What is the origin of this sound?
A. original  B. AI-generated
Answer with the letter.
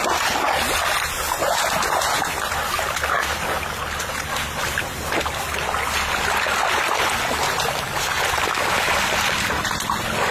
A